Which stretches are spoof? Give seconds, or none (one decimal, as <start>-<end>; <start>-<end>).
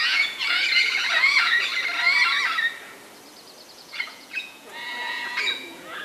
0.0-1.7; 3.7-6.0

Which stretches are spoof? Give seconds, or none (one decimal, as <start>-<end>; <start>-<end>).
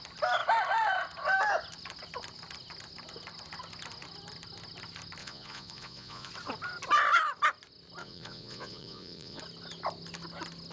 5.2-6.3; 8.0-9.4